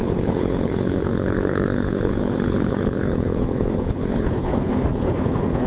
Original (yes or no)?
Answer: no